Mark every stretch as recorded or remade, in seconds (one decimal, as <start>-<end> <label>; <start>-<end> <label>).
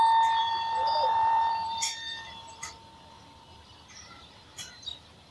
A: 0.0-0.4 recorded; 0.4-2.7 remade; 2.7-5.3 recorded